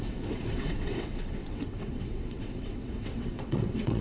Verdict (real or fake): fake